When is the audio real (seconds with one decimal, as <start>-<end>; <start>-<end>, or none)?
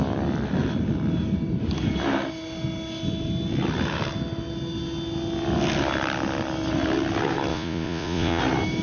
0.0-7.5; 8.4-8.8